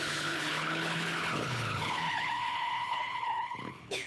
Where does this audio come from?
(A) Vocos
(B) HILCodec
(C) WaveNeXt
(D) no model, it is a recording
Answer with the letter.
B